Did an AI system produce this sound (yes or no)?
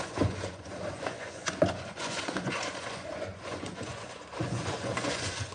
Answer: yes